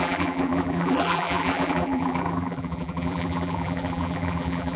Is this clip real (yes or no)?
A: no